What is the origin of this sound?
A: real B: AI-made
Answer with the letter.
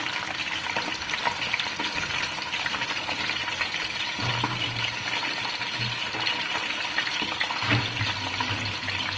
A